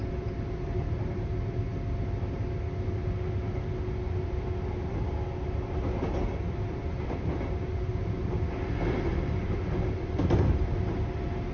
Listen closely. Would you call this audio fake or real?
real